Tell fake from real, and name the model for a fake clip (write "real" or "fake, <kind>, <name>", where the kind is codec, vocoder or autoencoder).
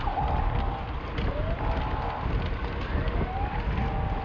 real